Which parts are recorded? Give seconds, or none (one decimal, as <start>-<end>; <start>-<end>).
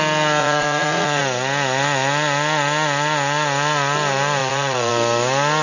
0.0-0.4; 1.2-4.4; 4.9-5.6